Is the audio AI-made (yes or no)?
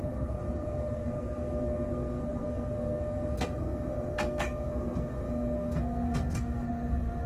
yes